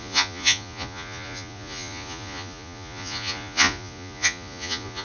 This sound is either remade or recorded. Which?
remade